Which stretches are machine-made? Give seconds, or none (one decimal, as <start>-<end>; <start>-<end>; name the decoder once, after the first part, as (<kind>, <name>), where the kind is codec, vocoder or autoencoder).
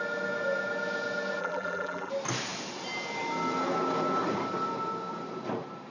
1.4-2.1 (vocoder, BigVGAN v2)